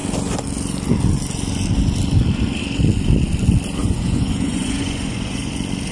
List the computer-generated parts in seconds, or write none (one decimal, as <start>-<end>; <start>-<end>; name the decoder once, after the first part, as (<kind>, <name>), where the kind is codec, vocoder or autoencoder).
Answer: 3.8-5.5 (vocoder, Vocos)